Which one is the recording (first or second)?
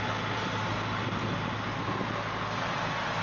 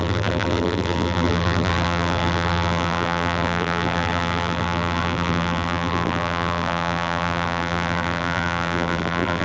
first